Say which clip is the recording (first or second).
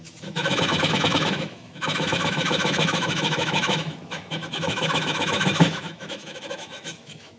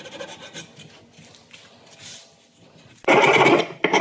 second